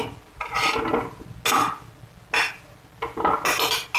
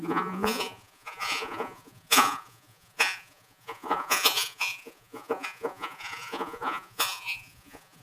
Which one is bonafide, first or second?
first